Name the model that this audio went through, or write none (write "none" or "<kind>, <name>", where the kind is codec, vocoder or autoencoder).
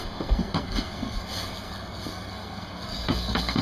codec, SNAC